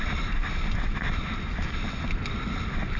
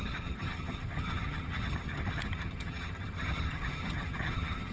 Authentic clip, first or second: first